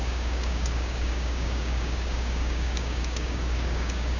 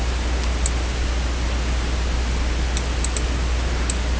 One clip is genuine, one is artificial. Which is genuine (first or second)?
second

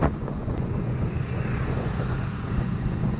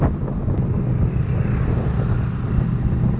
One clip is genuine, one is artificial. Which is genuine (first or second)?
second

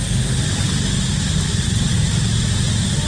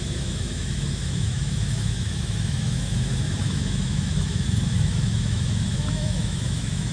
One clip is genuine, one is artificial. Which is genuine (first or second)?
first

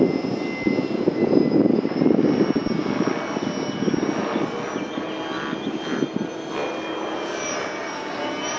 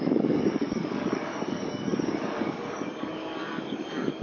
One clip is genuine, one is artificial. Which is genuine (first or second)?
first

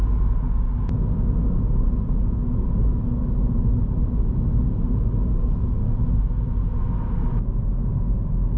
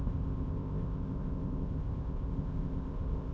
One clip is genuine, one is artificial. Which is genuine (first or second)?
first